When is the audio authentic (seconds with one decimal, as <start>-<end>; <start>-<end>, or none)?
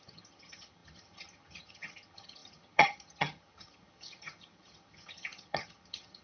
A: none